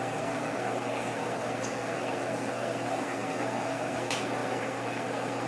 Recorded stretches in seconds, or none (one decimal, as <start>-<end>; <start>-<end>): none